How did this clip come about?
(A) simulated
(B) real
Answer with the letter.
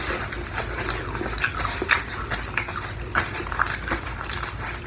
B